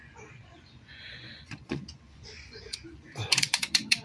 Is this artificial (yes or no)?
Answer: yes